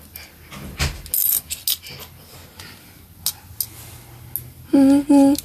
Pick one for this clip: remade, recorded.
recorded